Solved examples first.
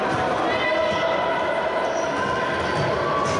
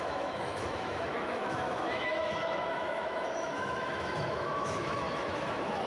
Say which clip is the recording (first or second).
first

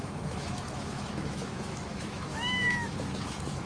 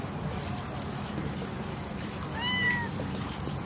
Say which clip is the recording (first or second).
second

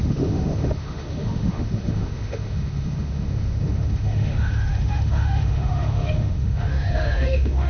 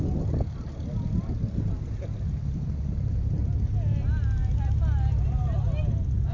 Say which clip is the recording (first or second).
second